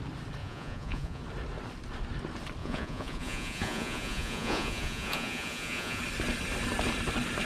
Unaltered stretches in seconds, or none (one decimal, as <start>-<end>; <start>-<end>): 0.0-0.4; 1.2-2.6; 6.0-7.5

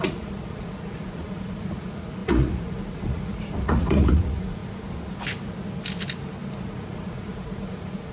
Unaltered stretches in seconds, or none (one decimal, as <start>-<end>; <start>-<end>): 4.6-6.7

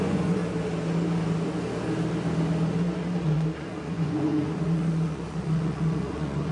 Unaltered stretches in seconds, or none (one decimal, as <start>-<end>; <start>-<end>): 0.4-3.2

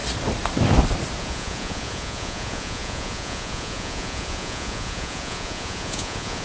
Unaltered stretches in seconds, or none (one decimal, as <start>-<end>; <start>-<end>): 0.0-1.2

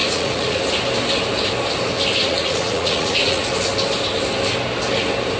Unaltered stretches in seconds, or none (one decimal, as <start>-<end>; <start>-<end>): 0.6-2.2; 3.5-5.4

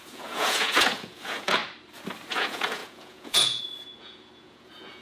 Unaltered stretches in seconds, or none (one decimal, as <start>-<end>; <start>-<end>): 1.6-2.3